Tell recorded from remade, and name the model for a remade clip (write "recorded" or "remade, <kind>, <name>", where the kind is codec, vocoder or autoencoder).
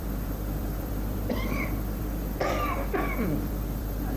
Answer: remade, vocoder, BigVGAN v2